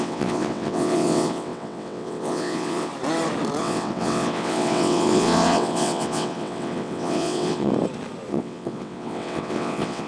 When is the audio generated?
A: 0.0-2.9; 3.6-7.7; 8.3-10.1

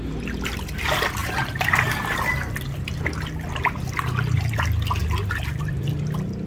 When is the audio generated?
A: 1.2-2.3

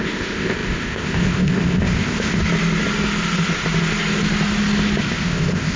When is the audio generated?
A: 0.0-2.4; 5.0-5.8

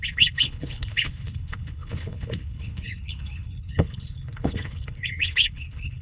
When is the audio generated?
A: 0.0-6.0